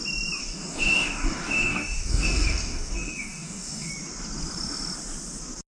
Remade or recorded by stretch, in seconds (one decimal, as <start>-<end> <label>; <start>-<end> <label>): 0.0-0.4 recorded; 0.4-3.9 remade; 3.9-5.8 recorded